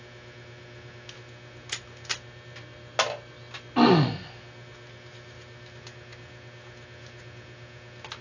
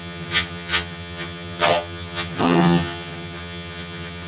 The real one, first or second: first